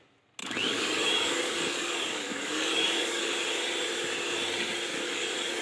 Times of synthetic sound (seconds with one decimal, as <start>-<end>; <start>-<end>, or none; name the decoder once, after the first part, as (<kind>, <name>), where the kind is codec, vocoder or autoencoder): 0.4-3.2 (codec, DAC); 4.9-5.6